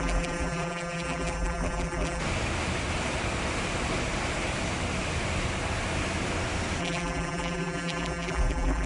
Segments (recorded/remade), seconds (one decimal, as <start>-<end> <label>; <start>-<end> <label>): 0.0-2.2 remade; 2.2-6.8 recorded; 6.8-8.9 remade